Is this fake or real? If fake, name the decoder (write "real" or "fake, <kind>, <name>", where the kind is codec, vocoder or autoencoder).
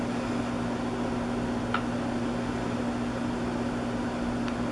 real